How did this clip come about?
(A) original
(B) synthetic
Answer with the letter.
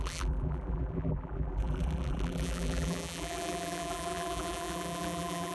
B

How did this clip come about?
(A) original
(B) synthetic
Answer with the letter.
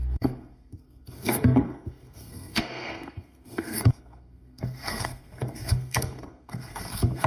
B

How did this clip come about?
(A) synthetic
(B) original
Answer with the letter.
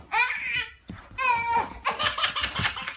B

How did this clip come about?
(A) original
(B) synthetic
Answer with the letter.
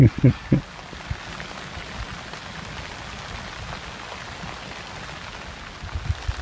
A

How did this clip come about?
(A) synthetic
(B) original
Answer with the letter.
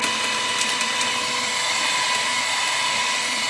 B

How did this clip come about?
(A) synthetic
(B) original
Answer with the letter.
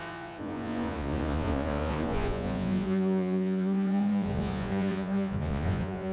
A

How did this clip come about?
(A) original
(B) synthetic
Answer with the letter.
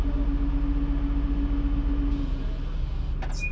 A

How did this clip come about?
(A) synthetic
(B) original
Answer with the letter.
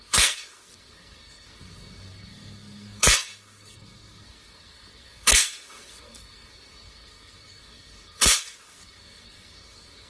A